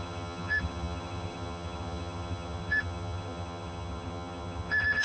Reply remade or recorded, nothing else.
remade